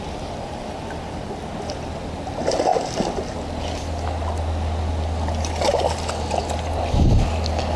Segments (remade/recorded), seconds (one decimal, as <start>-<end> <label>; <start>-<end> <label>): 0.0-7.8 recorded